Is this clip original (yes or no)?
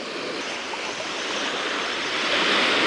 yes